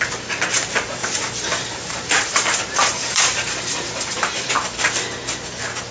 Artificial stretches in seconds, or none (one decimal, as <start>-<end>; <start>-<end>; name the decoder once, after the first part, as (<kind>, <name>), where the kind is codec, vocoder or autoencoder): 1.0-4.5 (vocoder, BigVGAN v2)